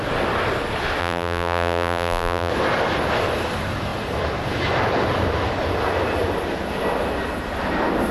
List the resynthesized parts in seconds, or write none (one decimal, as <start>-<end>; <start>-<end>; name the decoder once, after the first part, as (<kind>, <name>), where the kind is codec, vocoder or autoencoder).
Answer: 1.0-2.5 (vocoder, BigVGAN v2)